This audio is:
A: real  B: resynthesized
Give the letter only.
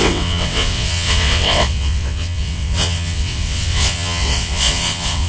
B